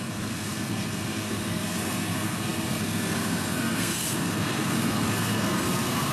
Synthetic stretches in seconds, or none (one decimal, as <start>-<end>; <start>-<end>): 0.0-6.1